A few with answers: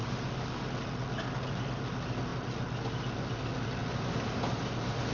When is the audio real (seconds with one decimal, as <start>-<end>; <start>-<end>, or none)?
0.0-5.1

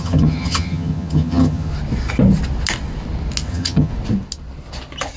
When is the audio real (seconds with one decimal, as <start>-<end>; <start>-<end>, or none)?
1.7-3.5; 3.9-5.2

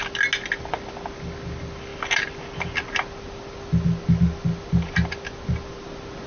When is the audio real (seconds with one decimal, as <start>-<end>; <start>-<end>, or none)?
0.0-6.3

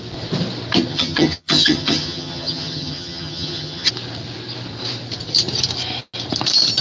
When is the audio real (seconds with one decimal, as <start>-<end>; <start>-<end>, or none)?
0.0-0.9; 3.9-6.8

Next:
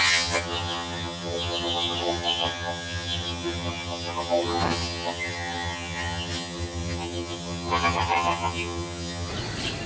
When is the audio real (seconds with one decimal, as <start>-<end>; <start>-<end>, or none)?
9.3-9.9

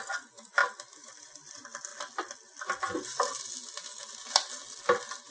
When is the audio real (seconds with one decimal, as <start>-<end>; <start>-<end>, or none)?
0.0-5.3